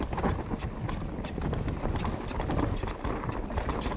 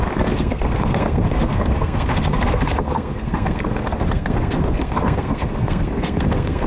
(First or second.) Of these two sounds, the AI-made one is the second